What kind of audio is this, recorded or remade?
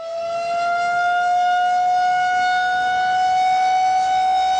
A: recorded